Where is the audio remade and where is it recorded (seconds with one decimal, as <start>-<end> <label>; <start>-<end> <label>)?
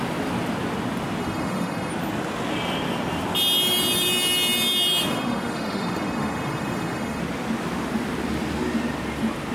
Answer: 0.0-1.2 recorded; 1.2-1.9 remade; 1.9-5.1 recorded; 5.1-7.2 remade; 7.2-9.5 recorded